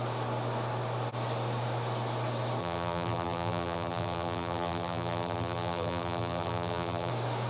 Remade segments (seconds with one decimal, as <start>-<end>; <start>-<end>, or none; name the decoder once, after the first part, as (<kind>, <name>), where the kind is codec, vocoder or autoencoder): 2.6-7.1 (vocoder, BigVGAN v2)